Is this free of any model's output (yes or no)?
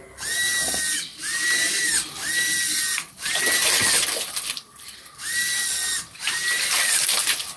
yes